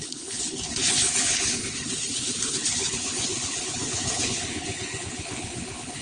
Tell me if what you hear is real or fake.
fake